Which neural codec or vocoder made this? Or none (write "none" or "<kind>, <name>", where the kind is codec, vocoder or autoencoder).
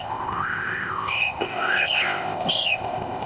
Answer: codec, ZipCodec